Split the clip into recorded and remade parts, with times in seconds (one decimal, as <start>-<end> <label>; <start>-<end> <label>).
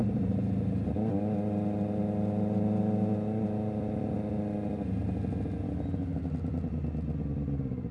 0.0-1.2 remade; 1.2-5.6 recorded; 5.6-7.9 remade